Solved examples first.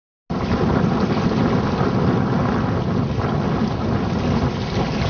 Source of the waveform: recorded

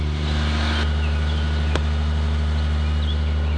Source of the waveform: recorded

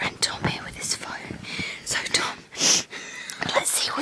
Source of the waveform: recorded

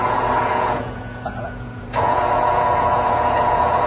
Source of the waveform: remade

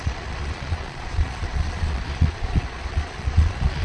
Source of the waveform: remade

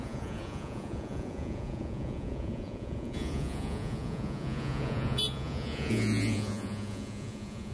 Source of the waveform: remade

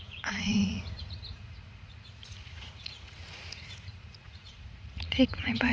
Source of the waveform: remade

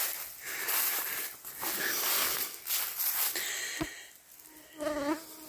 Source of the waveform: recorded